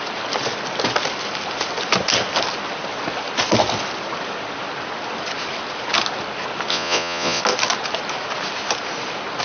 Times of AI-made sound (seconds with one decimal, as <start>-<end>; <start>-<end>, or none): 6.7-7.4